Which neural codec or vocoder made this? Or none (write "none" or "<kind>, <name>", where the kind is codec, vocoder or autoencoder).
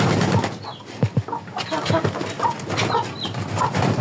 none